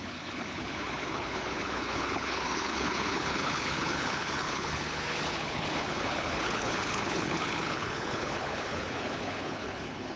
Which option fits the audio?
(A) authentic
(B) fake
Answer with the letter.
B